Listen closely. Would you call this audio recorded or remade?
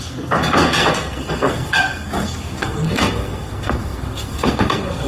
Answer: remade